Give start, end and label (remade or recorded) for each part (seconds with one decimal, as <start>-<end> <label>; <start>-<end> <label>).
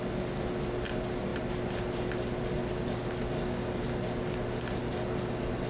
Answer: 0.0-5.7 recorded